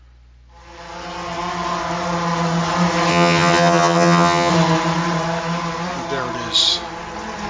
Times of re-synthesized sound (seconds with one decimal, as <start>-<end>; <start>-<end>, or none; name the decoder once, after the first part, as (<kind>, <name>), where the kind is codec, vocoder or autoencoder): 3.1-4.5 (vocoder, HiFi-GAN)